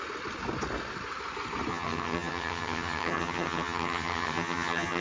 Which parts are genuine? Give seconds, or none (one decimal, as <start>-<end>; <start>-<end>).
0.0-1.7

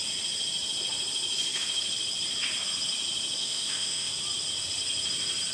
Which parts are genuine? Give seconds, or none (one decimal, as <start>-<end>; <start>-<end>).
0.0-3.4; 4.1-5.5

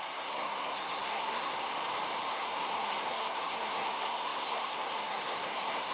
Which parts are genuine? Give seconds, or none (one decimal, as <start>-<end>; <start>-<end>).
1.7-2.3

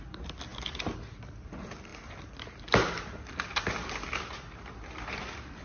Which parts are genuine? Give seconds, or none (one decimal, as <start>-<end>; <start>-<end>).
0.0-5.6

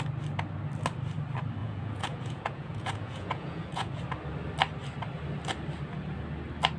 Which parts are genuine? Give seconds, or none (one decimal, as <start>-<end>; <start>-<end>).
0.0-1.6; 4.0-6.8